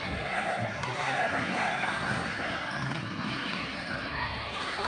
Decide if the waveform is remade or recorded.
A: remade